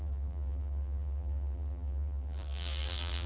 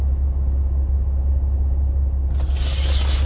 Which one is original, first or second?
second